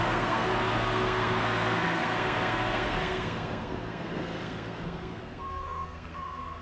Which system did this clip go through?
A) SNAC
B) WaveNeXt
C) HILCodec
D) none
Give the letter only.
A